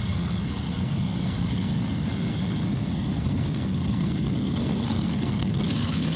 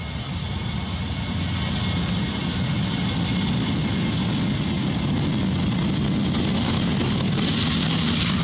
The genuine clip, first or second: second